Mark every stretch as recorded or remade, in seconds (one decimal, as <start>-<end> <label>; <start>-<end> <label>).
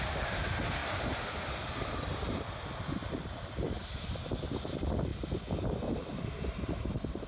0.0-7.3 recorded